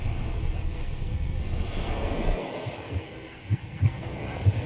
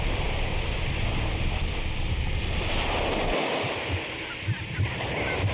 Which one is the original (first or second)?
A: second